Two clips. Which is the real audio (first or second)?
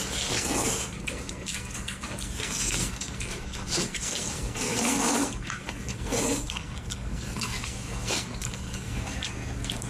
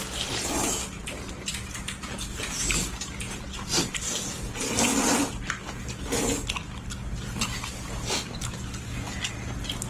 second